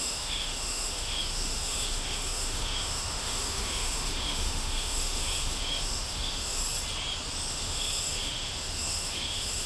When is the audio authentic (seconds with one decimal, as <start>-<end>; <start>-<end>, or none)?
6.6-7.5